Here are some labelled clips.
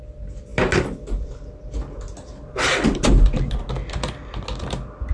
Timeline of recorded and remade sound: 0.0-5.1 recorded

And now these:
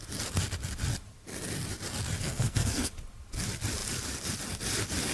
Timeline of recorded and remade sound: 0.0-2.2 recorded; 2.2-2.9 remade; 2.9-5.1 recorded

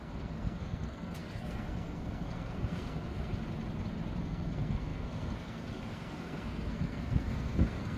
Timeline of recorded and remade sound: 0.0-3.3 remade; 3.3-4.2 recorded; 4.2-8.0 remade

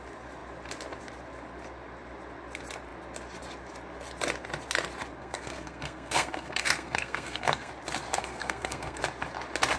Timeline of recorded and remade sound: 0.0-5.2 recorded; 5.2-7.7 remade; 7.7-8.1 recorded; 8.1-9.0 remade; 9.0-9.8 recorded

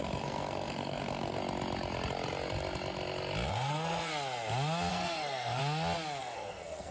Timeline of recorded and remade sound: 0.0-1.4 remade; 1.4-3.5 recorded; 3.5-4.1 remade; 4.1-4.9 recorded; 4.9-5.6 remade; 5.6-6.2 recorded; 6.2-6.9 remade

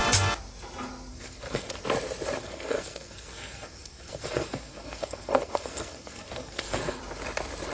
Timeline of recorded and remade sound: 0.0-1.1 recorded; 1.1-1.8 remade; 1.8-2.4 recorded; 2.4-7.0 remade; 7.0-7.7 recorded

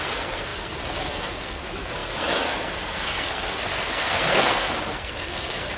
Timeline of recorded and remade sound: 0.0-5.8 remade

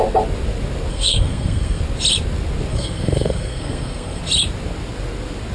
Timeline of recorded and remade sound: 0.0-0.9 recorded; 0.9-1.8 remade; 1.8-2.7 recorded; 2.7-4.2 remade; 4.2-5.5 recorded